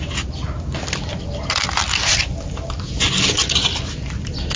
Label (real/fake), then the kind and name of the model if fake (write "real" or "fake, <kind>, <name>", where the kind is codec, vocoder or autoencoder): real